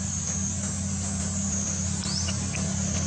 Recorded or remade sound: recorded